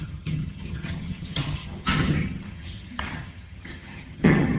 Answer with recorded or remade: remade